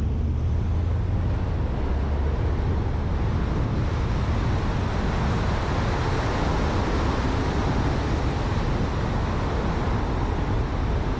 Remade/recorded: recorded